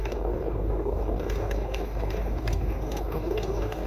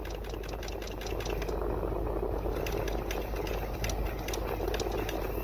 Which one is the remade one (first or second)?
first